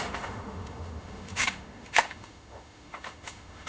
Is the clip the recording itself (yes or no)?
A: no